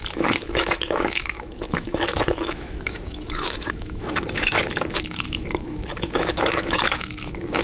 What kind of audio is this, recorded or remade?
remade